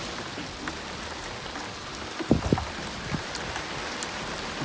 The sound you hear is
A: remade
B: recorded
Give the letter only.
B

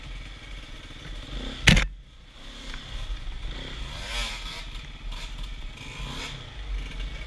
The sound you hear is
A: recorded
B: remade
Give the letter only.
A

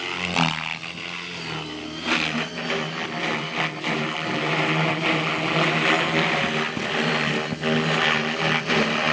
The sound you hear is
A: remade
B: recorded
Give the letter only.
B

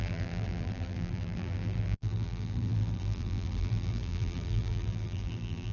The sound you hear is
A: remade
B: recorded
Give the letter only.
A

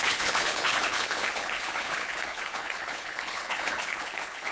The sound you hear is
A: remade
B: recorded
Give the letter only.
A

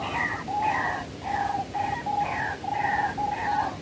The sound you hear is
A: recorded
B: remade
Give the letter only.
A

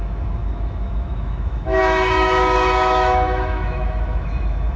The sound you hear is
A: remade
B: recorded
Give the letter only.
A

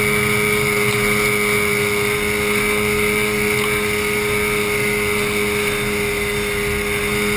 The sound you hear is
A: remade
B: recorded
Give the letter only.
B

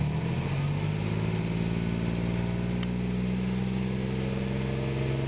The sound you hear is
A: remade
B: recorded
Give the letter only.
B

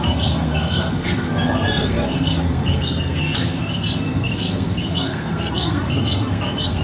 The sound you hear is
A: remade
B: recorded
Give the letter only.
A